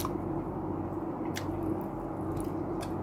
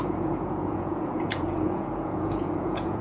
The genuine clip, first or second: first